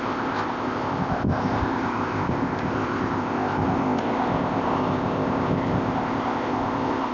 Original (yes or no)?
no